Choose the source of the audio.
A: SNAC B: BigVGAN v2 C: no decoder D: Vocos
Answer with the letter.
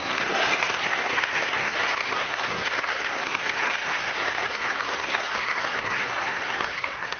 A